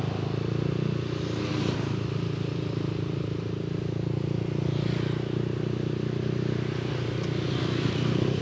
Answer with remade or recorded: recorded